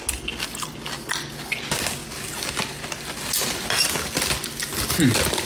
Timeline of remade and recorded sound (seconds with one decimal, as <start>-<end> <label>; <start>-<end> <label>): 0.0-5.5 recorded